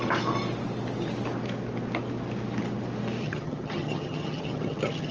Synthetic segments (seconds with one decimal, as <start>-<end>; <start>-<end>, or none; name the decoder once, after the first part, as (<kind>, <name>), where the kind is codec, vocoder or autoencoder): 3.2-5.1 (vocoder, HiFi-GAN)